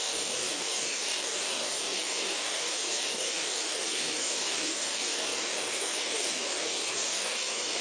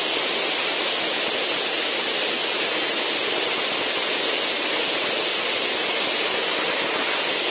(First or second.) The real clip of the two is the second